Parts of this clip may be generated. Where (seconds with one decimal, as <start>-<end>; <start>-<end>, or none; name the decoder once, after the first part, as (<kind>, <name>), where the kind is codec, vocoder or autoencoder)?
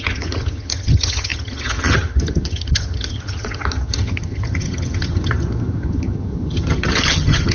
0.0-7.5 (vocoder, HiFi-GAN)